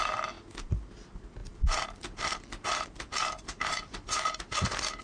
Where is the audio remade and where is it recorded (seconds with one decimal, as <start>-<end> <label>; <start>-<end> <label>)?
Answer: 0.0-1.4 recorded; 1.4-4.4 remade; 4.4-5.0 recorded